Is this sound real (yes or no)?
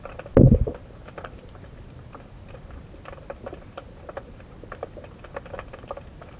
yes